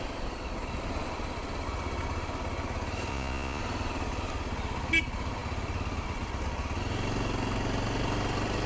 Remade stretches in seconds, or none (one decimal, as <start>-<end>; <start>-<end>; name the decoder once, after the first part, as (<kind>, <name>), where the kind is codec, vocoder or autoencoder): 3.1-3.6 (vocoder, Vocos)